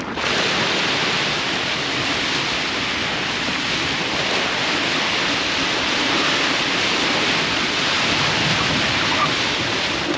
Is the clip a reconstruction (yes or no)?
no